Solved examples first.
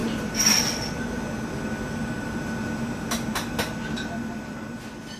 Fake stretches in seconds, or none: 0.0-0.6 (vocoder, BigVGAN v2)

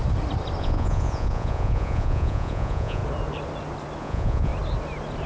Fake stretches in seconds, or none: 0.6-3.0 (vocoder, Vocos); 4.0-4.5